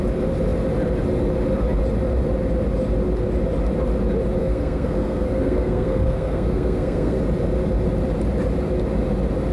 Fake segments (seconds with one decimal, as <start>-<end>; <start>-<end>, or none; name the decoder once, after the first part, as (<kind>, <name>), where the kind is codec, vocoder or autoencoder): 4.4-7.2 (codec, SNAC)

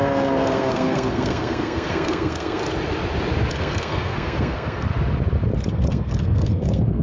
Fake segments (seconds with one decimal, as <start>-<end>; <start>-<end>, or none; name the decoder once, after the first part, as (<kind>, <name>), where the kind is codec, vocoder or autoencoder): 0.0-2.6 (codec, SNAC); 3.5-4.9; 5.7-7.0

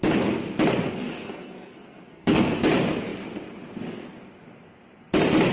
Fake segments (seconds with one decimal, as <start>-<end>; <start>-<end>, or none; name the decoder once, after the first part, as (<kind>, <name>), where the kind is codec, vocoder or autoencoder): 1.0-2.6 (codec, SNAC)

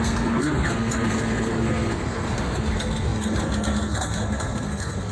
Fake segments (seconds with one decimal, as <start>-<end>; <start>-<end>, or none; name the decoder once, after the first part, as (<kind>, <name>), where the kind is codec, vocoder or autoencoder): 0.0-5.1 (codec, SNAC)

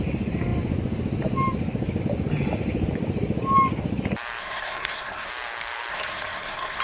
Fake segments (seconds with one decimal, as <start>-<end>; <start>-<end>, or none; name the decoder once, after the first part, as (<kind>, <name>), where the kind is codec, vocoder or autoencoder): 4.4-5.3 (codec, SNAC); 5.9-6.8